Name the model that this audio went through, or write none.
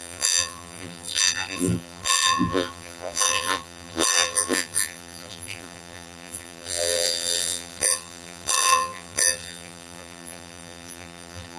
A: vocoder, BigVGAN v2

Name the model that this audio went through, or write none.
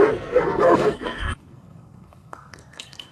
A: codec, SNAC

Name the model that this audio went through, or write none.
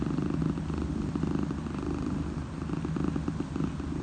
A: none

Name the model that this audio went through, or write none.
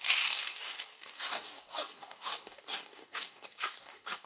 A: codec, DAC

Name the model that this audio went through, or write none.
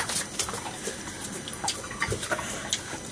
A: none